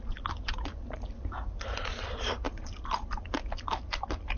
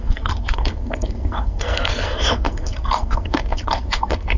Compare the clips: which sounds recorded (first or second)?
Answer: first